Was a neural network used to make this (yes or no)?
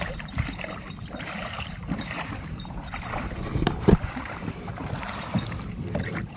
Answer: yes